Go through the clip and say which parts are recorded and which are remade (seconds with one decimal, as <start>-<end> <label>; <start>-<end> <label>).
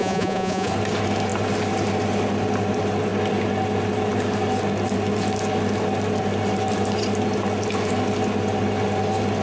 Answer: 0.0-0.7 remade; 0.7-9.4 recorded